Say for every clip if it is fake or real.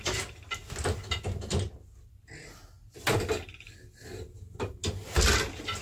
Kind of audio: real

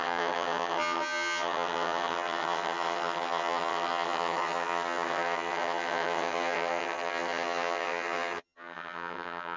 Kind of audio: fake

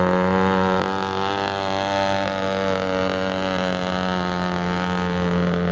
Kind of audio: real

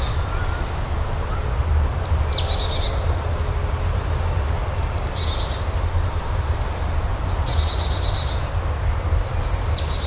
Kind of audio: real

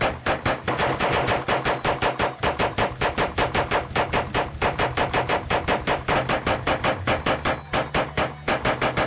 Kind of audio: real